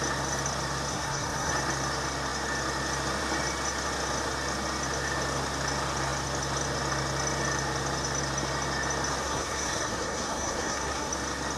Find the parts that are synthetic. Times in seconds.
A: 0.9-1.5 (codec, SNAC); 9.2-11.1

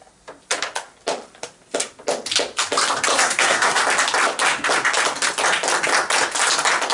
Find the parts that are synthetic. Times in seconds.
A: 3.1-3.8 (codec, SNAC)

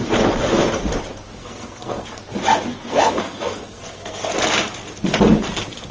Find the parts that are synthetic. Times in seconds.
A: 1.4-2.2 (codec, SNAC); 2.7-4.3